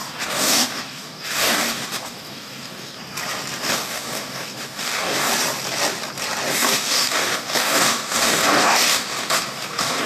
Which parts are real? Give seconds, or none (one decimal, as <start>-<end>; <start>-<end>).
3.0-3.6; 5.3-6.5